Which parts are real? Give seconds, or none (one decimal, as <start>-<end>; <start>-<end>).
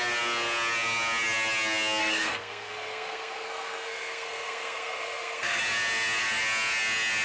0.0-2.0; 5.6-7.2